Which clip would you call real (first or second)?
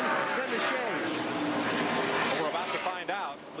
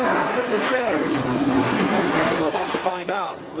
first